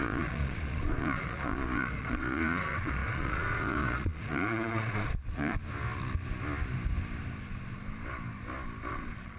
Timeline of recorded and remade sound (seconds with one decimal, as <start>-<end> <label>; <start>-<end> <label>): 0.0-5.6 remade; 5.6-8.9 recorded; 8.9-9.4 remade